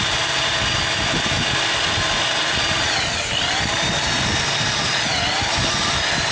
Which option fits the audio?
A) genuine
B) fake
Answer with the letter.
A